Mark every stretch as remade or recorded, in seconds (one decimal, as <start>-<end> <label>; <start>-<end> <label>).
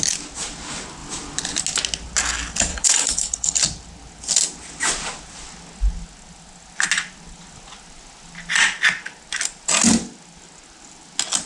0.0-2.7 recorded; 2.7-3.6 remade; 3.6-11.5 recorded